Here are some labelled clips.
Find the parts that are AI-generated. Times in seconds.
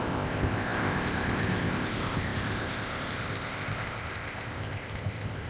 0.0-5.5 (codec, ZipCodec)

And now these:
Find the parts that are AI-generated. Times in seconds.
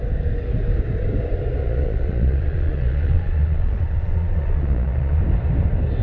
1.6-5.2 (vocoder, Vocos)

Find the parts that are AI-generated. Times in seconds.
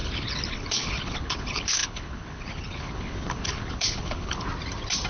0.0-4.5 (codec, HILCodec)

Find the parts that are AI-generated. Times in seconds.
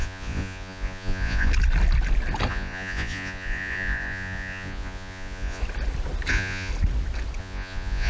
0.0-1.5 (vocoder, Vocos); 2.5-5.6; 6.3-6.7; 7.4-8.1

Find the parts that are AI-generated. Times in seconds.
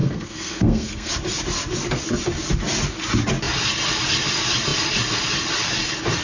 0.0-1.1 (codec, SNAC)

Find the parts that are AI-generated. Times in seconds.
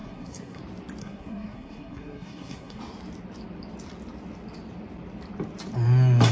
0.0-0.6 (codec, SNAC); 1.0-2.8